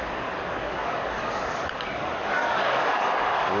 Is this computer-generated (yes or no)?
yes